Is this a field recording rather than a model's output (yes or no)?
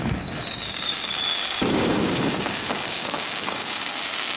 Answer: no